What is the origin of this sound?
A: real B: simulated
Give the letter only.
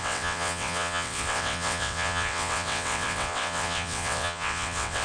B